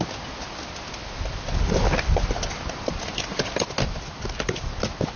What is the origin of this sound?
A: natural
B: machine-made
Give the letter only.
A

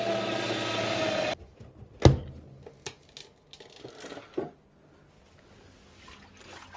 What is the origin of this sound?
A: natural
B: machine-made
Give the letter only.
A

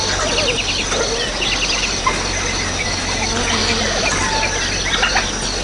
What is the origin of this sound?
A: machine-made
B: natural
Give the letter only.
B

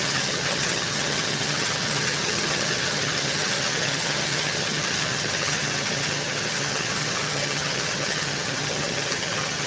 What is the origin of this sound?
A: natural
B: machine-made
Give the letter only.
B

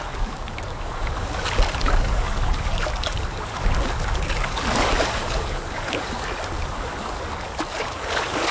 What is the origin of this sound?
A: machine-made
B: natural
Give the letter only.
A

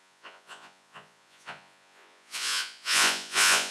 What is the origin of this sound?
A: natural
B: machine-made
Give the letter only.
B